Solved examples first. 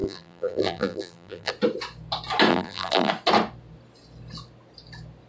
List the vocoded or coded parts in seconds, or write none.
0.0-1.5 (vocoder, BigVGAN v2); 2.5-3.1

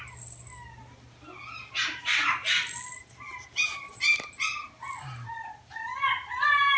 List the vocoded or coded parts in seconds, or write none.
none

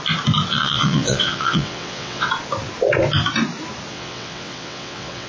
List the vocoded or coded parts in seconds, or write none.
0.5-2.3 (vocoder, WaveNeXt); 3.9-5.3

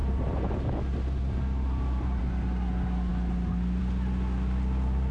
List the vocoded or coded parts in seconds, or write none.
none

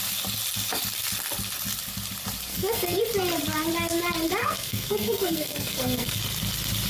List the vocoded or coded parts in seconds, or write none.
2.5-3.0 (codec, SNAC); 4.4-6.2

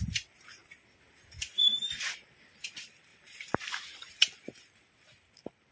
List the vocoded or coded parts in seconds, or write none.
3.1-4.2 (vocoder, BigVGAN v2)

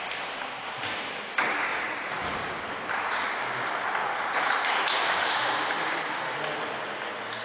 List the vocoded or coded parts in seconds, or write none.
1.7-2.5 (vocoder, Vocos); 4.0-4.5

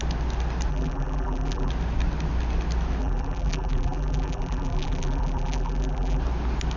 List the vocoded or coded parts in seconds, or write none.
0.7-1.7 (vocoder, BigVGAN v2); 3.0-6.2